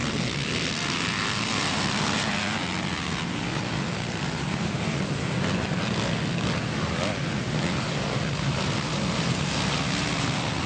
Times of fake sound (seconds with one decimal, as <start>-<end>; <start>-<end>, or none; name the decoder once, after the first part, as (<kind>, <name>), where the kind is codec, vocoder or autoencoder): none